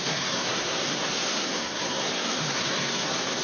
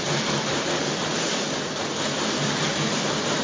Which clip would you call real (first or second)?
second